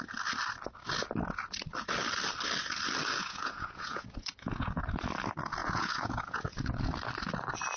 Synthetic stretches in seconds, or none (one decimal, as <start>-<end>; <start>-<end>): 3.2-4.8; 5.6-6.9